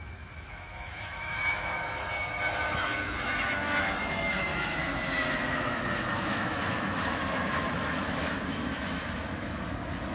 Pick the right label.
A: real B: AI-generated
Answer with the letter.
B